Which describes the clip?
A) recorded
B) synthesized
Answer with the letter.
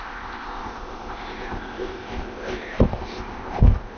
B